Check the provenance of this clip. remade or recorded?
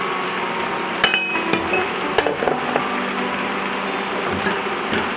recorded